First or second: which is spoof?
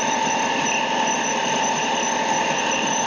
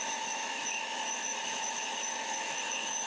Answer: second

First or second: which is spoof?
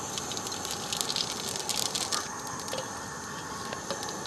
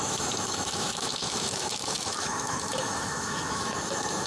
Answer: second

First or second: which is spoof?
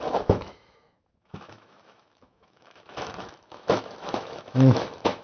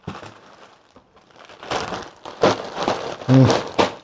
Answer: first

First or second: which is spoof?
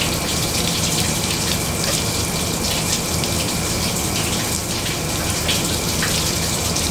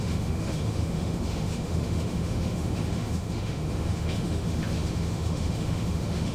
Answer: second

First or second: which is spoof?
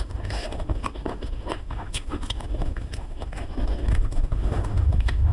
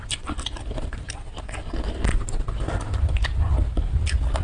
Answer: first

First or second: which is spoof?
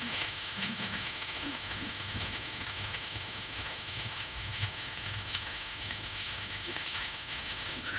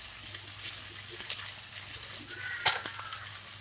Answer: first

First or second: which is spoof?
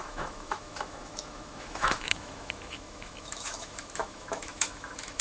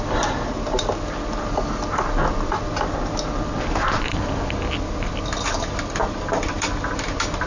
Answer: first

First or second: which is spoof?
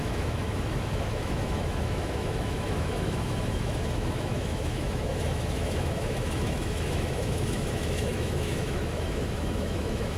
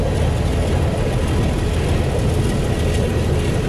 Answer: first